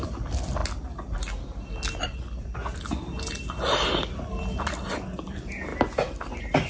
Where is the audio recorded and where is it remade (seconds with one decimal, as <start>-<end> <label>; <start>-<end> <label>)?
0.0-6.7 recorded